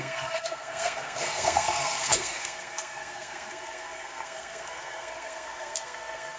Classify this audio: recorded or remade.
remade